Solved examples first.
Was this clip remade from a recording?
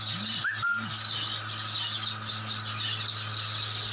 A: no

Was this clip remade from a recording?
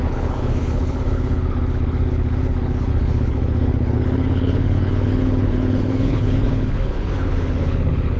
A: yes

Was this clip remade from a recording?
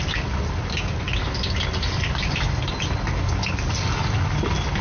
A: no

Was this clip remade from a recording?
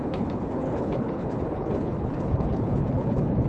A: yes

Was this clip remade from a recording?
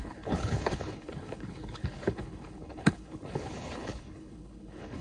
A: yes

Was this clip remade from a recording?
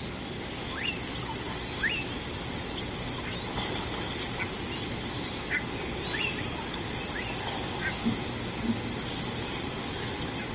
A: no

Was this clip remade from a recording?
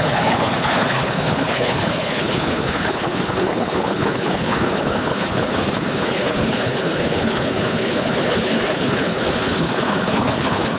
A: yes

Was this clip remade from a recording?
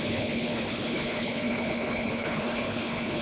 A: yes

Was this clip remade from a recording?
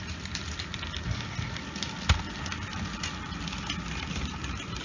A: no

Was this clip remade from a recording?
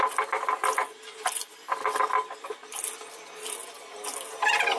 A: no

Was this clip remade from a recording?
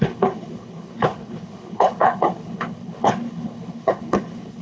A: yes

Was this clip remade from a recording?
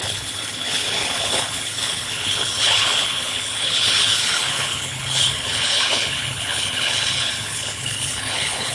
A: yes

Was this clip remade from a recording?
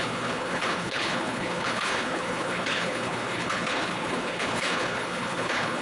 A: yes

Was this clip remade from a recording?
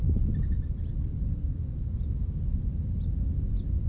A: no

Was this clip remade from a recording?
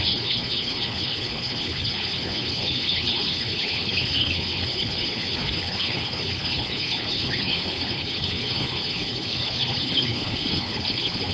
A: yes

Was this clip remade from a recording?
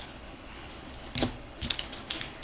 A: yes